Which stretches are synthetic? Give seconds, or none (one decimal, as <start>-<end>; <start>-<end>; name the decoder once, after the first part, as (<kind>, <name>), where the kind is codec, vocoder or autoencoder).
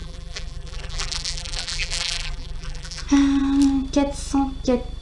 0.0-3.0 (vocoder, BigVGAN v2)